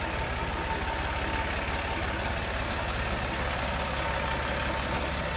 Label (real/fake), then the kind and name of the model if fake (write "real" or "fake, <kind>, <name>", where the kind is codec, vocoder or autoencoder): real